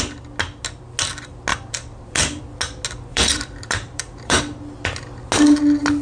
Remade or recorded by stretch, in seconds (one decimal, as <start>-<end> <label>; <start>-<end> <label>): 0.0-1.5 recorded; 1.5-2.4 remade; 2.4-3.1 recorded; 3.1-4.4 remade; 4.4-6.0 recorded